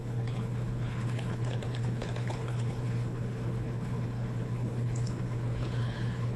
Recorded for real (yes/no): no